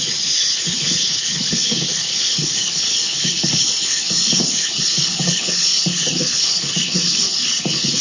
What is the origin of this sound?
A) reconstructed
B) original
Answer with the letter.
A